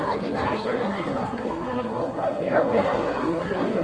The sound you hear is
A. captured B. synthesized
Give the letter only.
B